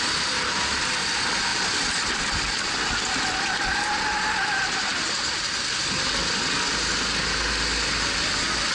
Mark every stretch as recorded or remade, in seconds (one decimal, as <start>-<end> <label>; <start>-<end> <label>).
0.0-8.7 recorded